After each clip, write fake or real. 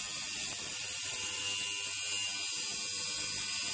real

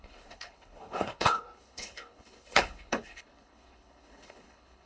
fake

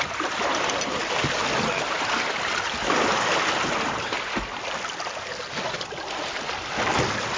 real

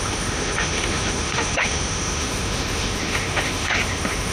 fake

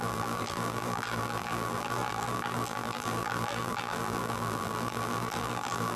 fake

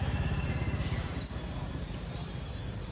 fake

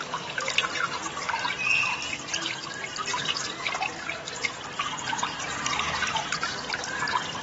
real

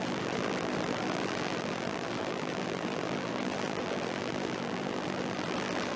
fake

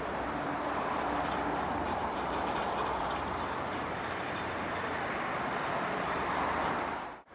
fake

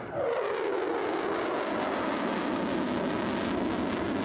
real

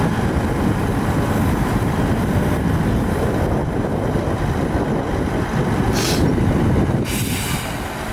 real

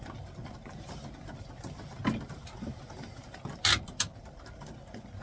real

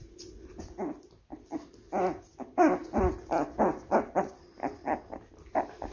real